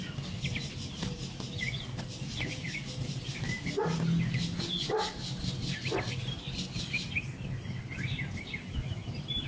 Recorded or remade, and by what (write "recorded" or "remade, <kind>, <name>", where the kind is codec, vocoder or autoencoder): recorded